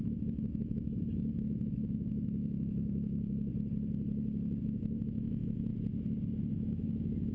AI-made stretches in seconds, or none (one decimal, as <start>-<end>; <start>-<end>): 0.0-3.5; 4.6-5.7; 6.5-7.3